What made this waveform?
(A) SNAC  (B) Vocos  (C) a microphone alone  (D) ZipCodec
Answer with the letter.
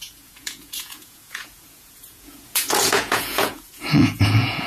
B